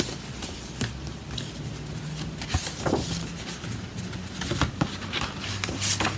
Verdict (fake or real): real